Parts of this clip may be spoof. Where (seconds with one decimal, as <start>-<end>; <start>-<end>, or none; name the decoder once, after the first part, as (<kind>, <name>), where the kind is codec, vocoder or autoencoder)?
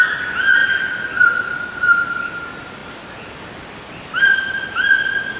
none